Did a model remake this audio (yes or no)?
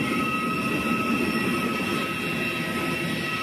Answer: no